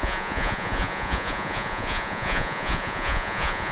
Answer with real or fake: fake